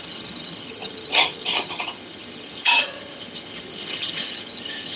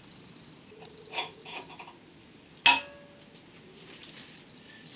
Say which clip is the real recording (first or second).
second